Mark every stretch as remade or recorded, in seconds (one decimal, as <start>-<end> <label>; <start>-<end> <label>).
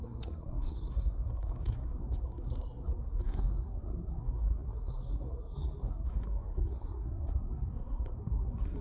0.0-8.8 remade